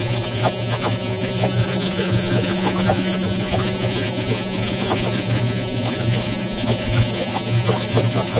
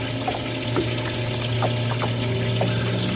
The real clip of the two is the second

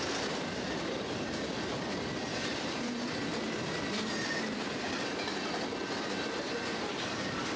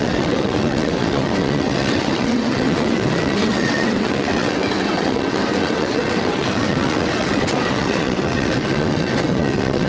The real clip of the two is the first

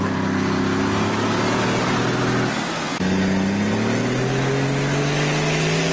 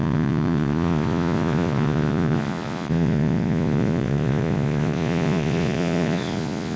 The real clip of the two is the first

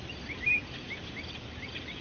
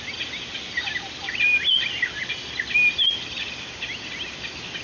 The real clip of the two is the second